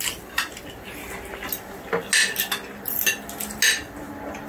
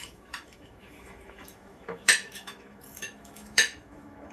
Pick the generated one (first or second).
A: second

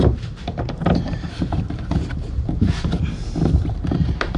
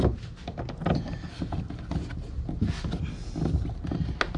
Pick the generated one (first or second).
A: first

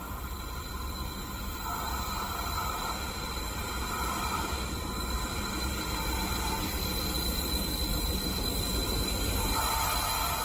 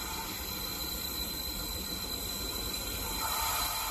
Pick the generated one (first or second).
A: second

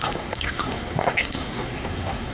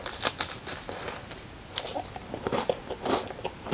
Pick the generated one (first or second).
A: first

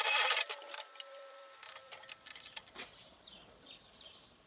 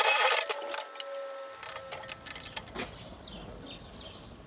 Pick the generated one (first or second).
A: first